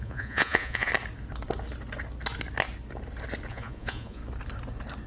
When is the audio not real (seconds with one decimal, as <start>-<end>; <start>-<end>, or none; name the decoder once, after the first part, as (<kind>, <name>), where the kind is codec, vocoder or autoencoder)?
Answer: 0.0-0.9 (vocoder, Vocos); 3.5-4.2